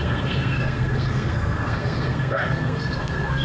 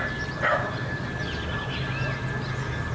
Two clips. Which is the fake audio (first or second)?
first